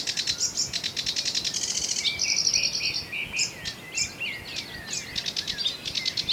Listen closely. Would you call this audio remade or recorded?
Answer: recorded